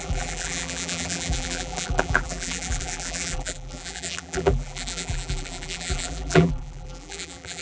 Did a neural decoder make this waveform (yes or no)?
yes